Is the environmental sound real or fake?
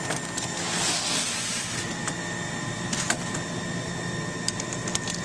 real